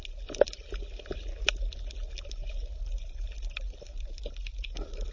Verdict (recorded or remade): recorded